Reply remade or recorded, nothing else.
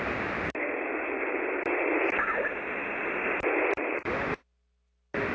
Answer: recorded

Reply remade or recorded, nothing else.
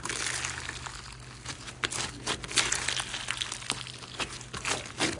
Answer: recorded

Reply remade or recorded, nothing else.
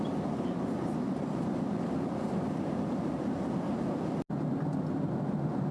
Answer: recorded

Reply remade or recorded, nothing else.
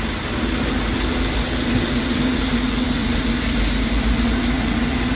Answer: recorded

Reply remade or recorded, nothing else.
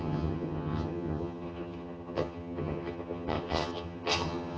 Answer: remade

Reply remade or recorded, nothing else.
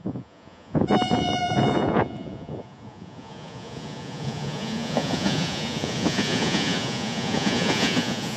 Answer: remade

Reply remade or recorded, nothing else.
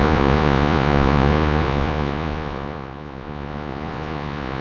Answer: remade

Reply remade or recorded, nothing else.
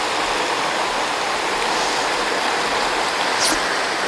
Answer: recorded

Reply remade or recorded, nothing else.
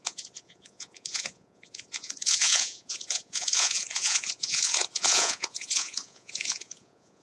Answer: remade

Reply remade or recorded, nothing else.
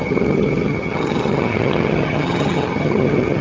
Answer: remade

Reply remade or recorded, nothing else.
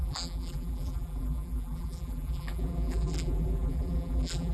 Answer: remade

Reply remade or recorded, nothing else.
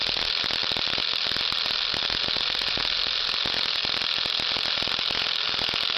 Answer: recorded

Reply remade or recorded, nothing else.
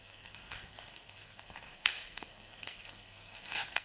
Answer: remade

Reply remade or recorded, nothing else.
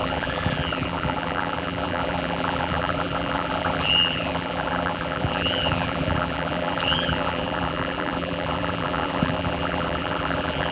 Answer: remade